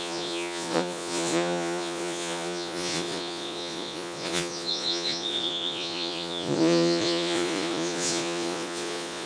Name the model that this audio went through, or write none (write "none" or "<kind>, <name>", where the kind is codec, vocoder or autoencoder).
vocoder, Vocos